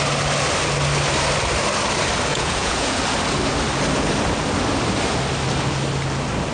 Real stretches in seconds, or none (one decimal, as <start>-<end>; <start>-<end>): 0.0-2.3; 3.0-6.5